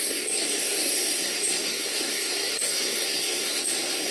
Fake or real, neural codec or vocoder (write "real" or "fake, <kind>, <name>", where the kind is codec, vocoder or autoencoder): fake, codec, SNAC